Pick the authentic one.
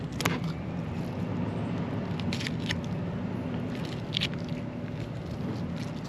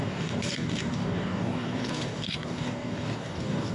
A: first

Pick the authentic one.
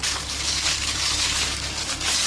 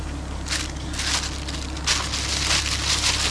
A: second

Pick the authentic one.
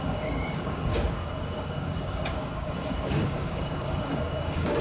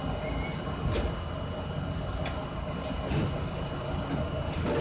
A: second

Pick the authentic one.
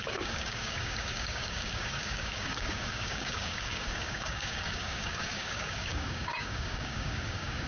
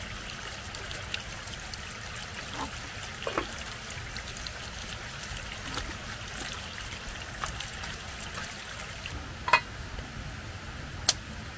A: second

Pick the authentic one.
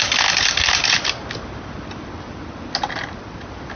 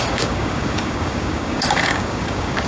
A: first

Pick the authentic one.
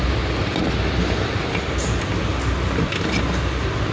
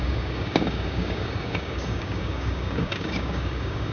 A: first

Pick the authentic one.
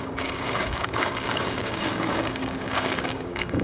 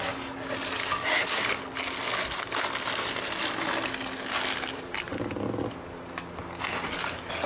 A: second